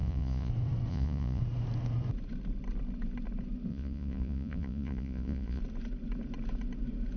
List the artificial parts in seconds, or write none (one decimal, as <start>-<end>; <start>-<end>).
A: 0.0-0.5; 0.9-1.4; 3.7-5.6